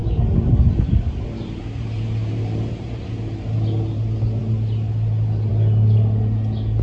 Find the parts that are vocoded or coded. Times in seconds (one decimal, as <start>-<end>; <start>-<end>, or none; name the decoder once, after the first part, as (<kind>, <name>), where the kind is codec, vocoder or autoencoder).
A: 0.0-3.0 (vocoder, BigVGAN v2)